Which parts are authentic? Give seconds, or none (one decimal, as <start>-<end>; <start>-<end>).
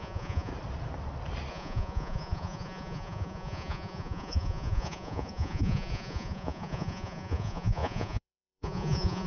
0.5-1.5